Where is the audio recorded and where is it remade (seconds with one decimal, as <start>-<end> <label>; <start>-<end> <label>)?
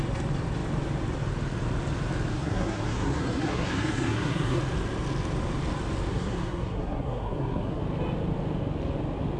0.0-2.3 recorded; 2.3-4.6 remade; 4.6-6.1 recorded; 6.1-7.8 remade; 7.8-9.4 recorded